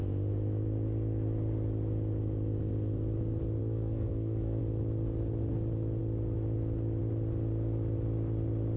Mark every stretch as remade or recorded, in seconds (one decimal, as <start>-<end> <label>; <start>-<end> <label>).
0.0-3.6 recorded; 3.6-4.6 remade; 4.6-8.8 recorded